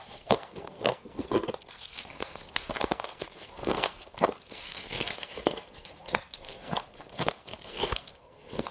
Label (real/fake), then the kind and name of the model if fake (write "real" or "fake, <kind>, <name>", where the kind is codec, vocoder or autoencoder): fake, codec, SNAC